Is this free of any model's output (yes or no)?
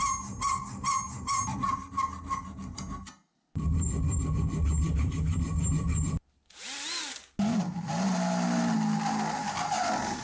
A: yes